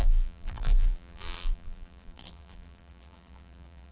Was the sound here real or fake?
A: fake